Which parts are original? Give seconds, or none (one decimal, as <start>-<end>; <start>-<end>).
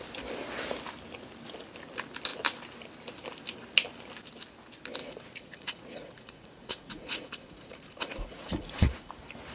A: 0.0-5.0; 9.1-9.5